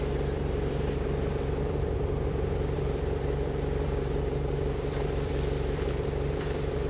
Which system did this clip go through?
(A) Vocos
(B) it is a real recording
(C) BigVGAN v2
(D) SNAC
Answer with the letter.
C